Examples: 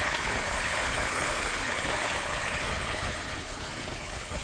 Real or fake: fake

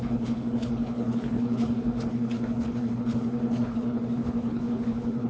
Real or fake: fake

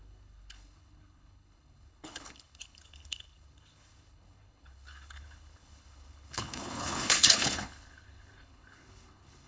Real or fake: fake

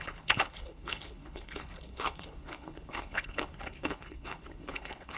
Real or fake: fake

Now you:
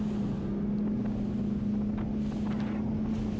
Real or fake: real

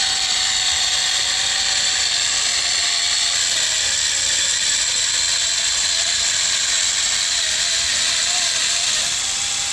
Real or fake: real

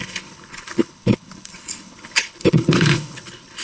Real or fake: fake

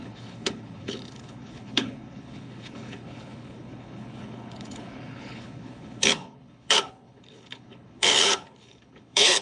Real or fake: fake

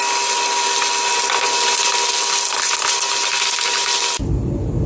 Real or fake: real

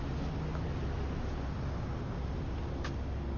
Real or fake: real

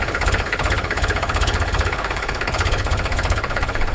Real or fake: fake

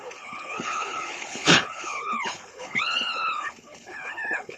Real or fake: fake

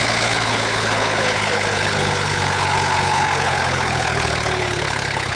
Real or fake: fake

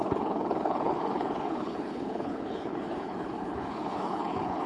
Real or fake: fake